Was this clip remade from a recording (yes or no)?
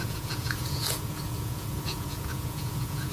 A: yes